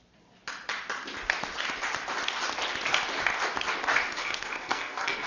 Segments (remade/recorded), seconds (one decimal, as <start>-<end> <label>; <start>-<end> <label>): 0.0-4.2 recorded; 4.2-5.3 remade